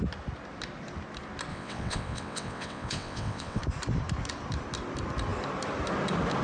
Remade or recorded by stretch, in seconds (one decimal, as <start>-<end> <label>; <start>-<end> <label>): 0.0-1.5 recorded; 1.5-3.6 remade; 3.6-6.4 recorded